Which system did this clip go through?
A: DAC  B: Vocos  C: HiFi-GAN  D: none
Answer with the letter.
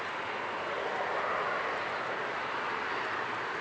D